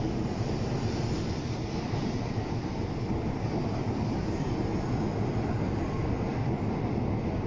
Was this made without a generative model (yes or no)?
yes